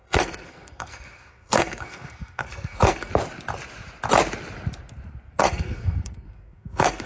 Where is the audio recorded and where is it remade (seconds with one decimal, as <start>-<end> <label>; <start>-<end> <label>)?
0.0-3.1 remade; 3.1-5.4 recorded; 5.4-7.1 remade